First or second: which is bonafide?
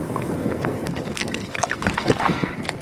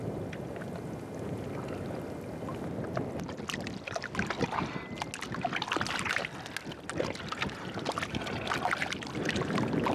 second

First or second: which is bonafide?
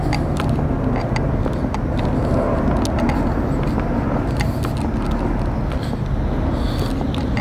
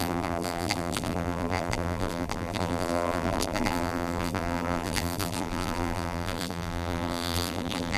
first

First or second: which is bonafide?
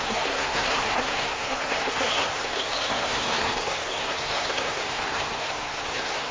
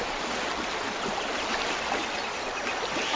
second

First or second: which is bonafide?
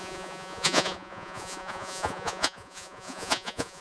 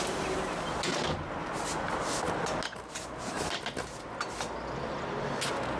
second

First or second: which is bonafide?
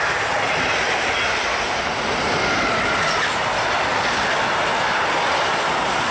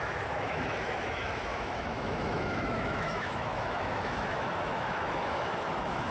first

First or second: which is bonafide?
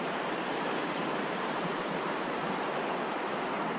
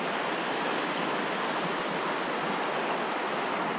second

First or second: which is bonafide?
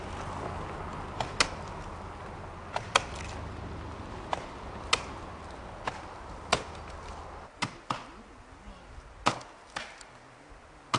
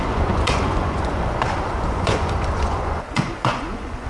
first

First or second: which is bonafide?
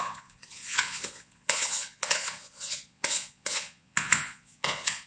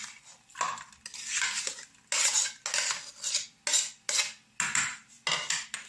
second